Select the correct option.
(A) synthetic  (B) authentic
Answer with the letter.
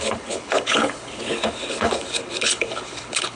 A